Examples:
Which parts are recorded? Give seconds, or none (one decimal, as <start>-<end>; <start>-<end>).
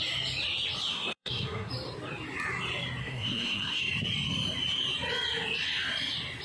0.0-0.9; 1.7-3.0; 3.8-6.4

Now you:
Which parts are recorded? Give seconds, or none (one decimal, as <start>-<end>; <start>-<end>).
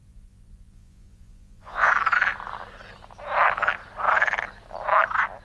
1.9-5.4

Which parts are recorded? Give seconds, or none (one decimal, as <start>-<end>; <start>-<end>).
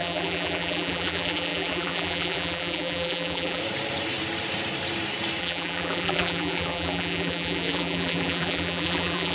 3.6-5.4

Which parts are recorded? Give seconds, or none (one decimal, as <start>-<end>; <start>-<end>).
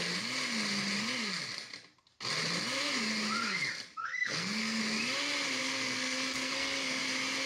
0.0-4.0; 4.8-5.6; 7.0-7.5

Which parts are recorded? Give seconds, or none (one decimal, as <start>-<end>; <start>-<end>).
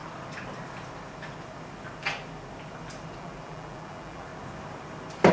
0.0-3.2; 4.3-5.3